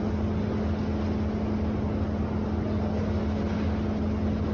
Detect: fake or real real